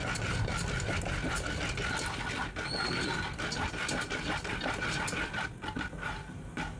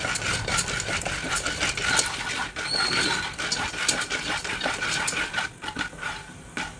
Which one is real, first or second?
first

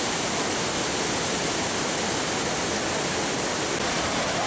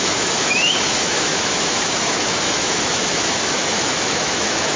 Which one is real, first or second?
first